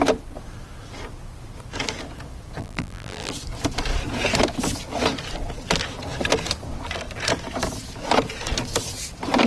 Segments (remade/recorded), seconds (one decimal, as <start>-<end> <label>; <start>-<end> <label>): 0.0-2.6 recorded; 2.6-3.3 remade; 3.3-9.5 recorded